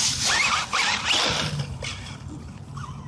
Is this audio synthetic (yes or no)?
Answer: no